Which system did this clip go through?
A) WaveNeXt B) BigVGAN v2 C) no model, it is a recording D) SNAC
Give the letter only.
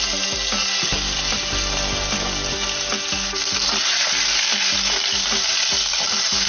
C